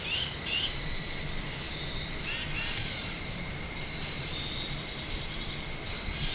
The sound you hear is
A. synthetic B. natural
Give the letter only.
A